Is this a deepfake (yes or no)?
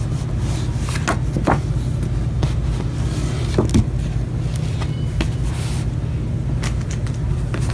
no